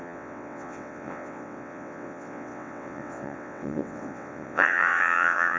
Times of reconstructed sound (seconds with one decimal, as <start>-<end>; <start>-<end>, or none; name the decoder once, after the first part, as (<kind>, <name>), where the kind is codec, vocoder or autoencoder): 0.0-5.6 (vocoder, WaveNeXt)